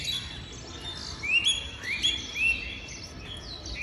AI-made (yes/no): no